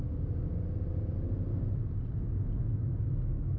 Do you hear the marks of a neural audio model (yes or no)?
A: no